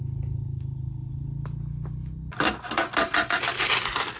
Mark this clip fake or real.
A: real